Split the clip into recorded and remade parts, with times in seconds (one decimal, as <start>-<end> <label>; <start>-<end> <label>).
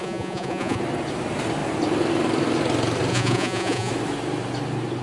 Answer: 0.0-0.8 remade; 0.8-3.1 recorded; 3.1-3.9 remade; 3.9-5.0 recorded